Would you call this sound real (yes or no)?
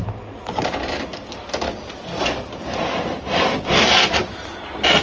yes